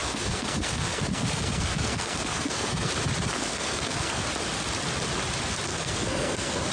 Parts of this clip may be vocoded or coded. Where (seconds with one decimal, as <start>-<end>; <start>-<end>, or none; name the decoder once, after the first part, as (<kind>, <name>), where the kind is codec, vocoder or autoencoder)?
0.0-2.9 (codec, SNAC); 3.3-4.2; 5.7-6.7